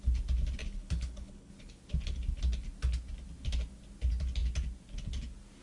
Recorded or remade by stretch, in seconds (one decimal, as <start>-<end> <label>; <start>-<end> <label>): 0.0-0.6 recorded; 0.6-1.5 remade; 1.5-5.6 recorded